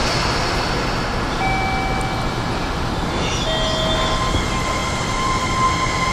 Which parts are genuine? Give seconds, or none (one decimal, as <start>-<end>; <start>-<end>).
0.0-4.8; 5.5-6.1